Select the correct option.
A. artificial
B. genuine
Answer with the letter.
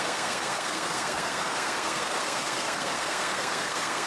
A